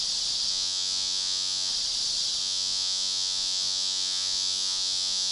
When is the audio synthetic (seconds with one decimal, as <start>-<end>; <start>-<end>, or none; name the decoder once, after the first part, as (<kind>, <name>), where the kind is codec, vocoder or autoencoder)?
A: 0.5-1.7 (vocoder, Vocos); 2.4-5.3